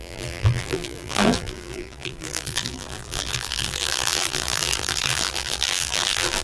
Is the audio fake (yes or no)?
yes